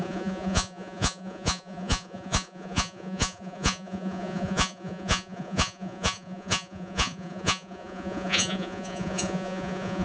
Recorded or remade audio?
remade